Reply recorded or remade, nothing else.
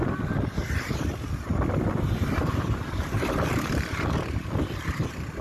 recorded